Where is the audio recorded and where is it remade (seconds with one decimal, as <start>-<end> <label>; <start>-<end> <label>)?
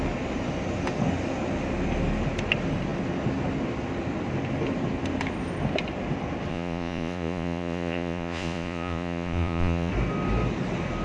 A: 0.0-6.5 recorded; 6.5-9.9 remade; 9.9-11.0 recorded